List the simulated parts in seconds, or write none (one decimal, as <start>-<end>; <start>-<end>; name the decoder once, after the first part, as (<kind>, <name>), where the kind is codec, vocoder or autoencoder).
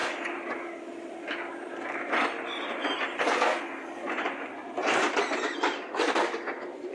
0.0-2.8 (vocoder, BigVGAN v2); 5.2-6.9